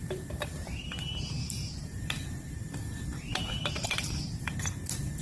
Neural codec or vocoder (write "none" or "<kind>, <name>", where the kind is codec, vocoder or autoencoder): vocoder, BigVGAN v2